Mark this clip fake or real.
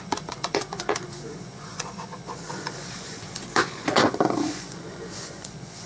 fake